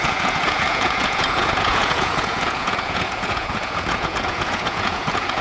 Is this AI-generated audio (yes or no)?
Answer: yes